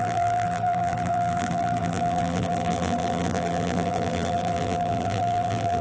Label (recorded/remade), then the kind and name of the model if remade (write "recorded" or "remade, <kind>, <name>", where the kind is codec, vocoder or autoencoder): remade, vocoder, BigVGAN v2